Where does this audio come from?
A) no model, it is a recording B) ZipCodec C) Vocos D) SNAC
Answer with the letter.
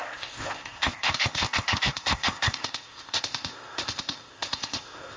B